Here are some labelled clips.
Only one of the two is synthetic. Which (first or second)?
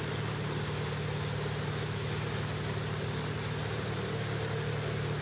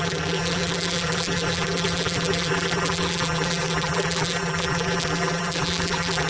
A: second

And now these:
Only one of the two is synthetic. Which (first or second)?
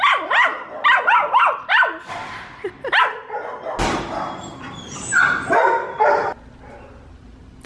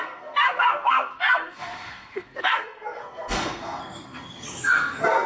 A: second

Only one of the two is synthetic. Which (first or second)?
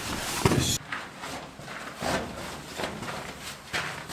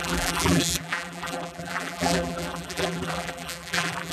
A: second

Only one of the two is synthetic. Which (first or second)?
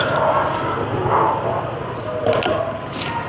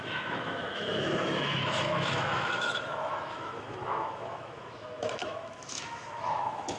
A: second